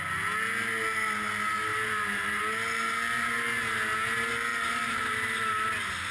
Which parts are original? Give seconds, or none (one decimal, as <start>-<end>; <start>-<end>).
0.0-1.7; 2.4-4.5; 5.5-6.1